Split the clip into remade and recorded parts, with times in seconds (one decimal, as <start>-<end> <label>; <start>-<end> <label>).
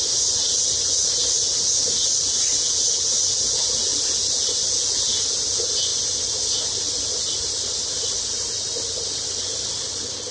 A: 0.0-10.3 recorded